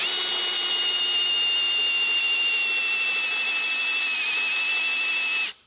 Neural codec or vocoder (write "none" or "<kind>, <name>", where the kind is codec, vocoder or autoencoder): none